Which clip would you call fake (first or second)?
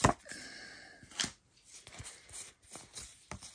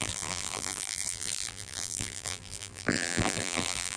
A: second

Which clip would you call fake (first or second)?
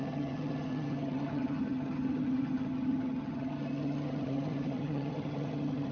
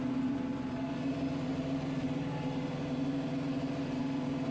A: first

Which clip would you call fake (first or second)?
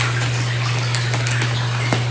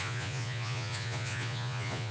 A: second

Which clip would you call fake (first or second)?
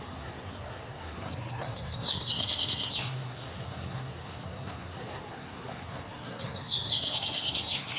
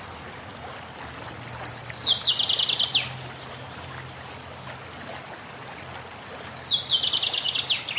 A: first